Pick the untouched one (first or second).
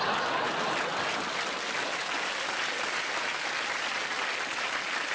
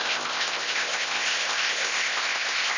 first